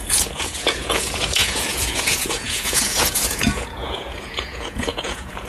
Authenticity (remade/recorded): remade